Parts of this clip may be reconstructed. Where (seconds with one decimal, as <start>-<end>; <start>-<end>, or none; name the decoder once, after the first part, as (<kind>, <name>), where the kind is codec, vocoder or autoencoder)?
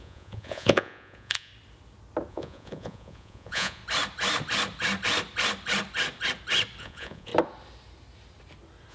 0.0-1.5 (vocoder, Vocos); 2.3-3.8; 6.8-7.3